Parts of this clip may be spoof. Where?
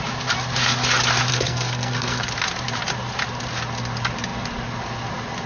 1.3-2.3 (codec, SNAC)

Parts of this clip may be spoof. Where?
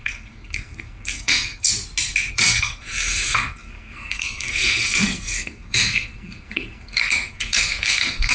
0.0-1.7 (codec, SNAC); 2.3-8.3